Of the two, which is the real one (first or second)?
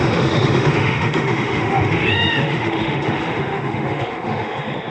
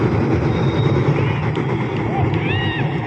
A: second